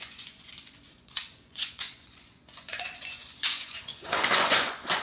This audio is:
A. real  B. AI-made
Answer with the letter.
B